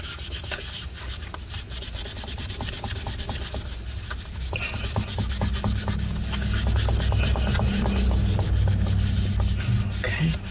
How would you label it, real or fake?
real